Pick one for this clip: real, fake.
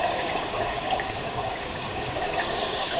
fake